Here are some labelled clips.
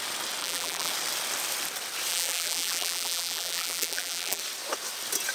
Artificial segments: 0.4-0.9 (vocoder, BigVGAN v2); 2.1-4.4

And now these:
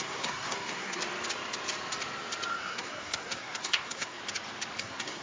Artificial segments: 0.0-1.0 (codec, SNAC); 2.5-4.2; 4.8-5.2

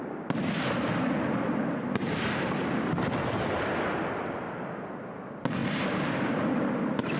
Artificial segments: none